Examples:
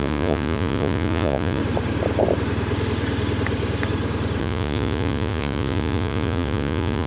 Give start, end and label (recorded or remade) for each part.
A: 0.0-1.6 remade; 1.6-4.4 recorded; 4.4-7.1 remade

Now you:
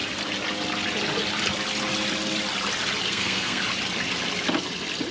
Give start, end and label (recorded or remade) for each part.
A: 0.0-3.1 recorded; 3.1-3.6 remade; 3.6-5.1 recorded

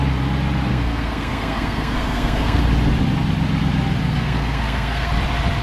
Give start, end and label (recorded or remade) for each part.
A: 0.0-0.7 recorded; 0.7-2.6 remade; 2.6-4.0 recorded; 4.0-5.1 remade; 5.1-5.6 recorded

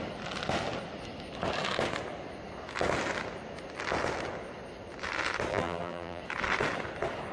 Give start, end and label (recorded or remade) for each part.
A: 0.0-5.5 recorded; 5.5-6.2 remade; 6.2-7.3 recorded

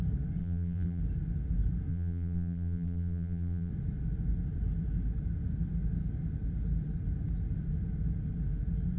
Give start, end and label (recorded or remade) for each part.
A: 0.0-0.4 recorded; 0.4-1.0 remade; 1.0-1.9 recorded; 1.9-3.7 remade; 3.7-9.0 recorded

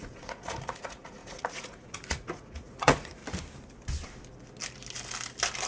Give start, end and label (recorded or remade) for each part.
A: 0.0-3.2 remade; 3.2-5.7 recorded

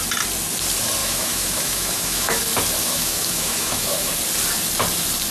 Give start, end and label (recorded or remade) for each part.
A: 0.0-1.0 recorded; 1.0-2.4 remade; 2.4-2.8 recorded; 2.8-4.1 remade; 4.1-5.3 recorded